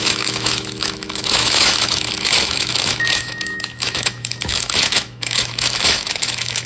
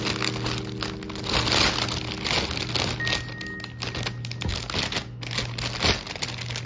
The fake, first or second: first